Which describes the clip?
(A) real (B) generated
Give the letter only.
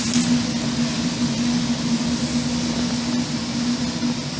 A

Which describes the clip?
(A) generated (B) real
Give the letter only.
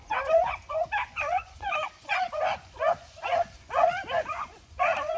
A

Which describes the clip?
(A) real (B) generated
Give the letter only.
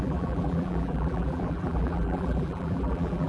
B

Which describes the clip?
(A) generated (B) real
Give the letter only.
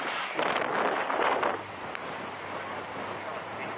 B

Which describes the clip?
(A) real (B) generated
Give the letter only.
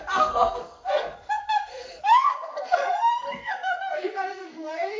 B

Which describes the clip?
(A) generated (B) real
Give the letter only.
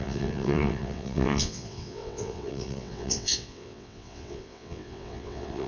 A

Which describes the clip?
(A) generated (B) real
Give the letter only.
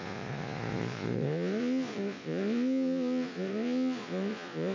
A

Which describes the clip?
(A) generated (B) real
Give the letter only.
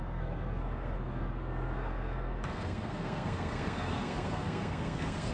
A